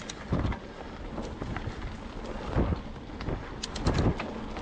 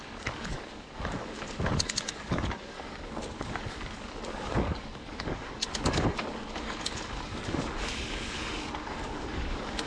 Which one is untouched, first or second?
first